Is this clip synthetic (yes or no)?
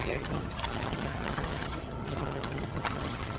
yes